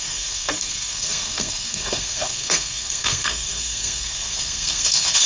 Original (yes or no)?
no